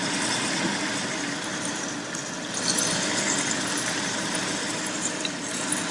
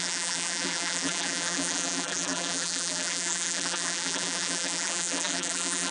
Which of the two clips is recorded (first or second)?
first